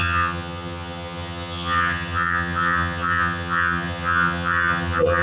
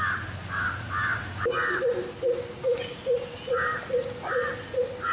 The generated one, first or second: first